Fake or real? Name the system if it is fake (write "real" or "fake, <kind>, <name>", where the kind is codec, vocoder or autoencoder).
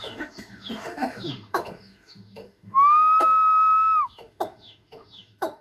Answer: fake, autoencoder, DAC-VAE